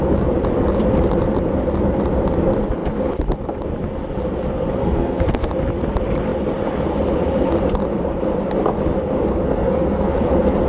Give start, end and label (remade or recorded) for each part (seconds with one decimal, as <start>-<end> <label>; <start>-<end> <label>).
0.0-4.8 recorded; 4.8-5.5 remade; 5.5-9.3 recorded; 9.3-10.1 remade; 10.1-10.7 recorded

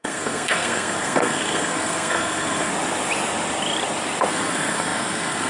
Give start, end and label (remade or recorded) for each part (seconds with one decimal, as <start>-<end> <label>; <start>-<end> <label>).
0.0-2.7 remade; 2.7-4.3 recorded; 4.3-5.5 remade